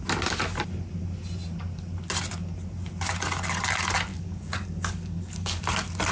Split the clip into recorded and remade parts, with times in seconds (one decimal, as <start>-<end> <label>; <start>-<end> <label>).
0.0-4.1 recorded; 4.1-5.6 remade; 5.6-6.1 recorded